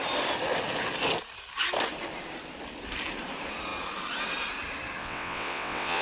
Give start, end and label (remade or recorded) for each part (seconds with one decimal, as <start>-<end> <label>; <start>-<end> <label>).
0.0-5.0 recorded; 5.0-6.0 remade